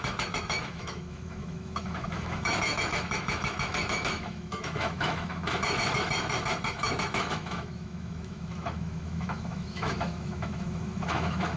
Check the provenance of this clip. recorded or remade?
remade